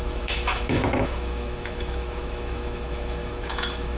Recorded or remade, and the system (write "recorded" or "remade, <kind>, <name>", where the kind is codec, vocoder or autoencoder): remade, autoencoder, DAC-VAE